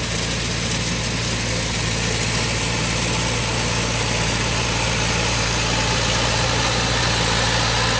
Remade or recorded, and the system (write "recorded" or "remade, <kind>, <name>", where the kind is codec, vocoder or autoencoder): recorded